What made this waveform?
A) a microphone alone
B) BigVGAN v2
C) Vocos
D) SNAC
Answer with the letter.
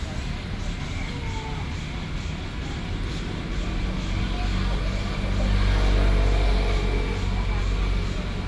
A